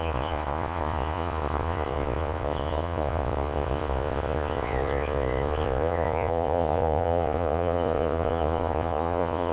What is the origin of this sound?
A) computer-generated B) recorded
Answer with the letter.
A